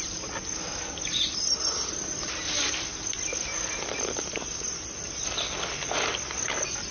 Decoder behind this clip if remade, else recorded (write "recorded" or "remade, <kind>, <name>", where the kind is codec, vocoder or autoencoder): recorded